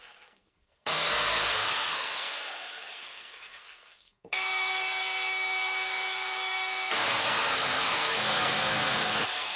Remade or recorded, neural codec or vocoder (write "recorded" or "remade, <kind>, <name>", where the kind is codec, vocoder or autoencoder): remade, codec, SNAC